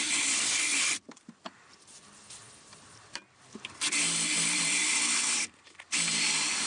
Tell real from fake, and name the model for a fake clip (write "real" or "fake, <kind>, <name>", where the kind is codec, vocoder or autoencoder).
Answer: fake, vocoder, BigVGAN v2